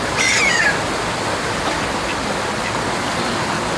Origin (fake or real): real